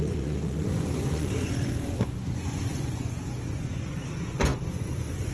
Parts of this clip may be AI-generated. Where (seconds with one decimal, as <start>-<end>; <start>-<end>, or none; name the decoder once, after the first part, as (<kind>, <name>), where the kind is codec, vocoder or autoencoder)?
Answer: 0.0-5.3 (vocoder, Vocos)